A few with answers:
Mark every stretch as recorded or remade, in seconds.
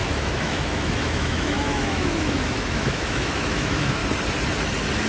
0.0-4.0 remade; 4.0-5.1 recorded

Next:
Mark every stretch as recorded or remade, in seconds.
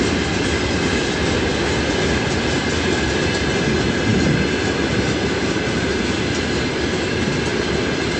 0.0-8.2 recorded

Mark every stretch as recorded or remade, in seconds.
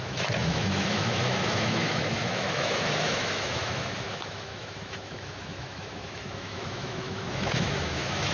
0.0-8.3 remade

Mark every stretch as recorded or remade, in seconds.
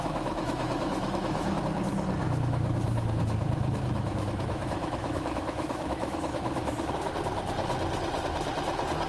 0.0-1.6 remade; 1.6-2.2 recorded; 2.2-7.1 remade; 7.1-9.1 recorded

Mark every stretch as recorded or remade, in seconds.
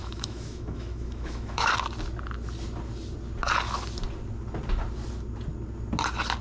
0.0-1.7 remade; 1.7-6.4 recorded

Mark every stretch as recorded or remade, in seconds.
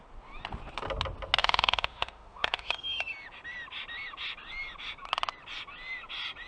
0.0-1.4 recorded; 1.4-2.7 remade; 2.7-6.5 recorded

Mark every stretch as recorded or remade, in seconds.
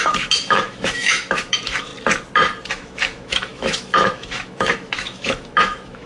0.0-1.9 remade; 1.9-2.7 recorded; 2.7-6.1 remade